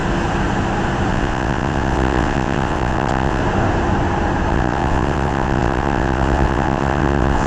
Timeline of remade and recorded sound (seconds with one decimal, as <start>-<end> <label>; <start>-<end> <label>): 0.0-1.1 recorded; 1.1-3.4 remade; 3.4-4.5 recorded; 4.5-7.5 remade